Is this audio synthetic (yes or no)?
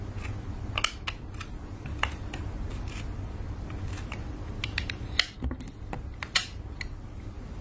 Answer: no